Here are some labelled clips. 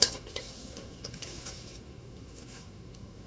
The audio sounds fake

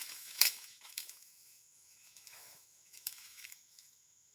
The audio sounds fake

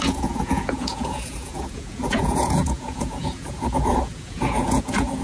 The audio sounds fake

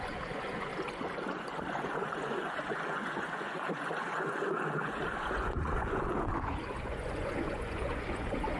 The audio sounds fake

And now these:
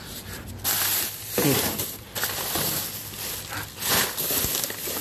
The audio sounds real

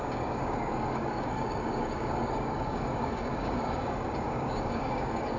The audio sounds fake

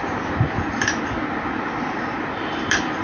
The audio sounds real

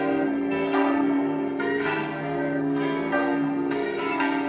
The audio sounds fake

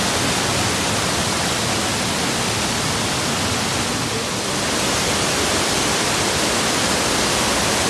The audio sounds real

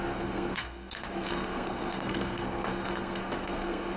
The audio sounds fake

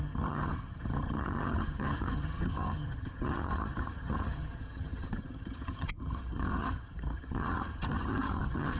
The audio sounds fake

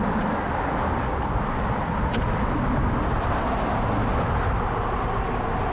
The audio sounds real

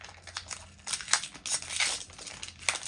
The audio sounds real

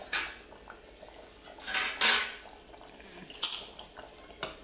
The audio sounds real